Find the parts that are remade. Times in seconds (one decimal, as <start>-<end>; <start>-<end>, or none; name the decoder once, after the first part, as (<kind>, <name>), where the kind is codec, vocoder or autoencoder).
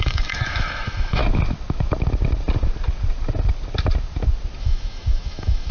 0.0-1.2 (autoencoder, DAC-VAE); 4.6-5.7